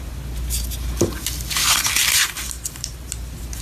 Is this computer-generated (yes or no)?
no